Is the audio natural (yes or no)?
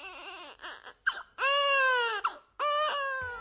yes